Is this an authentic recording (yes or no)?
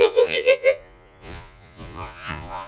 no